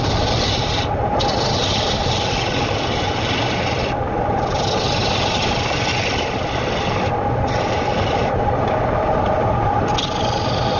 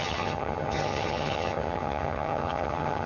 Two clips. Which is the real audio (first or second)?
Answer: first